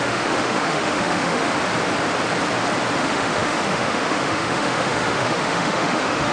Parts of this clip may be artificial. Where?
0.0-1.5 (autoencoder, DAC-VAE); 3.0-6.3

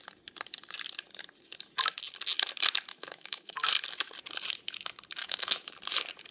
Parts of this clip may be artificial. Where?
2.9-3.5 (autoencoder, DAC-VAE); 5.2-5.7

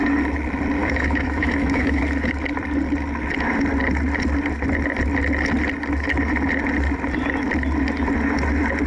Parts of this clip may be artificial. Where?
0.8-2.0 (autoencoder, DAC-VAE)

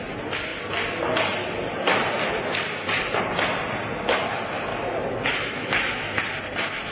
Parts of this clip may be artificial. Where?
4.7-6.2 (autoencoder, DAC-VAE)

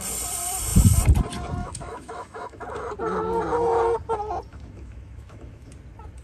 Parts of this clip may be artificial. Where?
1.6-2.6 (autoencoder, DAC-VAE); 4.5-5.7